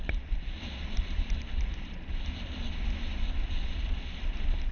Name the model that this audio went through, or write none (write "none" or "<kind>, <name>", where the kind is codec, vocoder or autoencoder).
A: none